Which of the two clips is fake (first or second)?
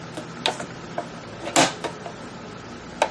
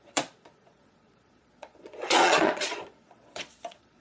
second